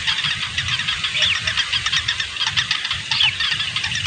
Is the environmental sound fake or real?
real